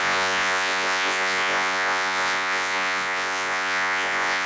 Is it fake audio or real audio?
fake